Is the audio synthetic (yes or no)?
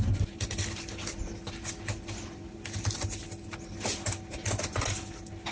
no